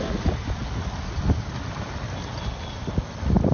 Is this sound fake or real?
real